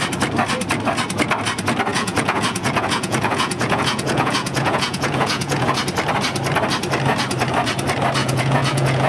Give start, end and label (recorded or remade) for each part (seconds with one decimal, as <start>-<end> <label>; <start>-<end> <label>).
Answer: 0.0-1.9 recorded; 1.9-5.8 remade; 5.8-8.2 recorded; 8.2-9.1 remade